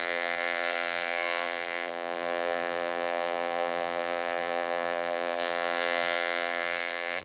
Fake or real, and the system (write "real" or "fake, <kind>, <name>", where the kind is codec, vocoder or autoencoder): fake, vocoder, BigVGAN v2